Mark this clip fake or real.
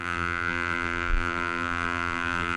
fake